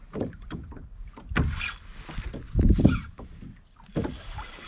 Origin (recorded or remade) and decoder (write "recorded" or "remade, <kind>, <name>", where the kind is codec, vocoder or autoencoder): recorded